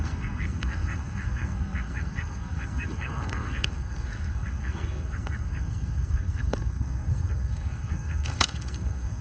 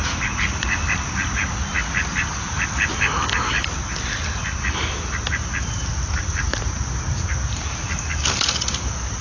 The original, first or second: second